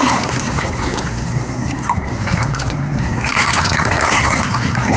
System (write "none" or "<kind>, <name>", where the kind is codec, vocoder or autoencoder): codec, SNAC